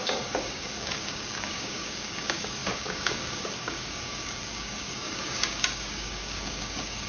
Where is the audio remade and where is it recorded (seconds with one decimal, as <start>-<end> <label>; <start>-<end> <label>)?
0.0-7.1 remade